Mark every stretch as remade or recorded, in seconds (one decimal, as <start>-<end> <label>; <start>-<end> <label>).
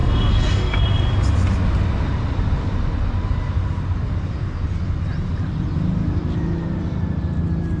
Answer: 0.0-0.8 remade; 0.8-7.8 recorded